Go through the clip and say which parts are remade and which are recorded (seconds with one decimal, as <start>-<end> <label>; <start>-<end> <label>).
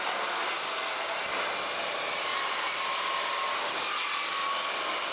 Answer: 0.0-5.1 recorded